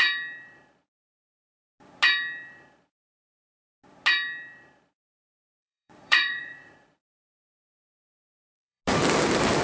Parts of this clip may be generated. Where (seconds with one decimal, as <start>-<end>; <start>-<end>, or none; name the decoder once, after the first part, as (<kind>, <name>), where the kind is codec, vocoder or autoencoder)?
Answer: 5.6-8.8 (vocoder, Vocos)